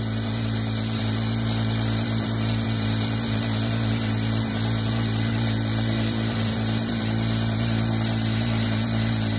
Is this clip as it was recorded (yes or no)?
no